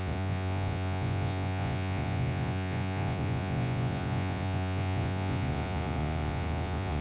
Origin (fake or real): fake